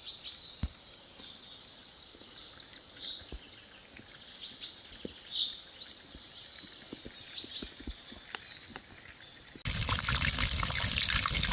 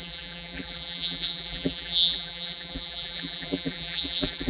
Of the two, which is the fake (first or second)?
second